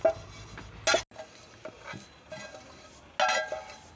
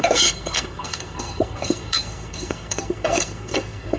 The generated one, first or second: second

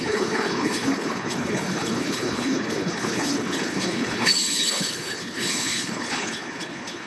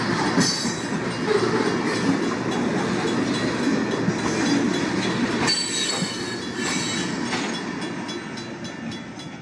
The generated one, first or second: first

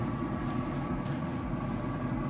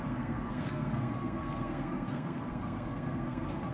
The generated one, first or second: second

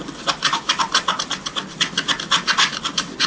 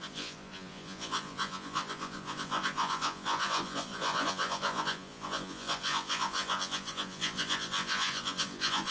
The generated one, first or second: second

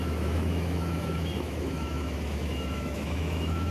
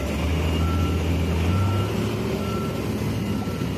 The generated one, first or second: first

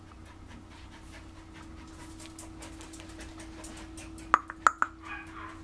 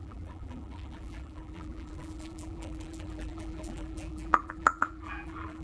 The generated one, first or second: second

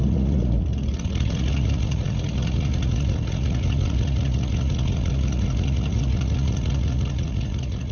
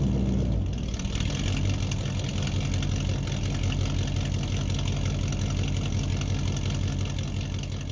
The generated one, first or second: first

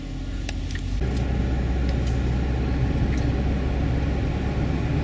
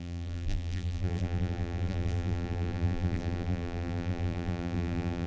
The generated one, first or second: second